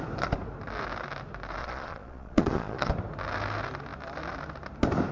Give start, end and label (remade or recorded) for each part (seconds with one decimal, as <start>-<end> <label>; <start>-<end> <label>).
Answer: 0.0-1.6 recorded; 1.6-2.9 remade; 2.9-5.1 recorded